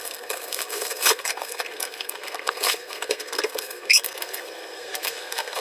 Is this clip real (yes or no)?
no